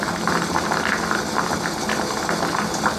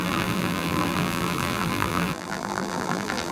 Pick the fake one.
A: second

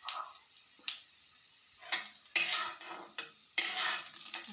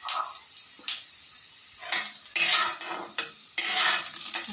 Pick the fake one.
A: first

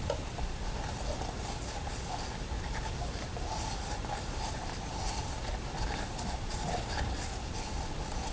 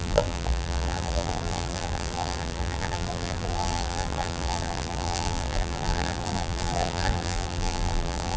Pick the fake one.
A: second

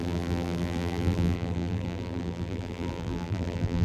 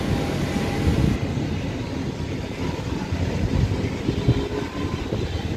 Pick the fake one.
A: first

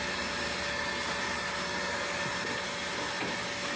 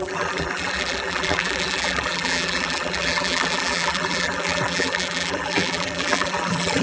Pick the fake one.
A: second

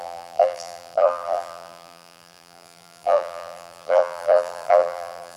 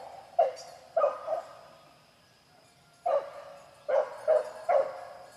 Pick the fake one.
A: first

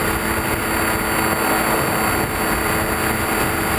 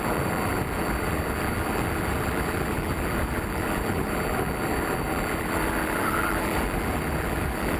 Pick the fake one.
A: second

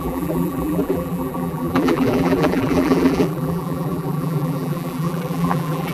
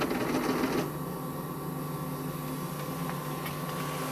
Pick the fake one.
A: first